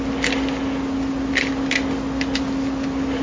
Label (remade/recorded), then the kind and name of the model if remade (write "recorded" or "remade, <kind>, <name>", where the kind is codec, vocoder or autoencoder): recorded